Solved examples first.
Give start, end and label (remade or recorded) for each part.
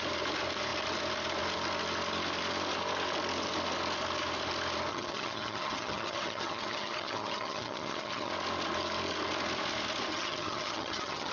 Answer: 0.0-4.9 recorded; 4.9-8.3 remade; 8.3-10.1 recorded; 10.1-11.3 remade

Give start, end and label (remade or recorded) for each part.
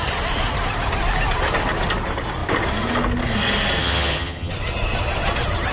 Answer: 0.0-3.8 recorded; 3.8-4.5 remade; 4.5-5.7 recorded